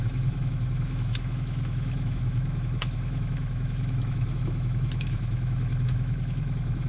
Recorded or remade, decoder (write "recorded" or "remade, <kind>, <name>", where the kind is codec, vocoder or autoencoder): remade, autoencoder, DAC-VAE